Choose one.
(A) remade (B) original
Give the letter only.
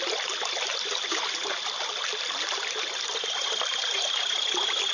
B